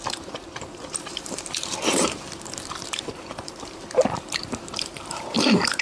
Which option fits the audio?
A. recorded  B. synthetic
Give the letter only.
B